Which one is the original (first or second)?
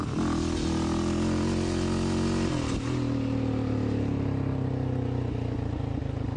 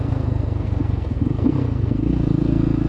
first